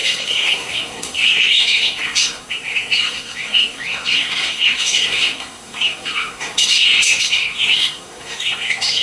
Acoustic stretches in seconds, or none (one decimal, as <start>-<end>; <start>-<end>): none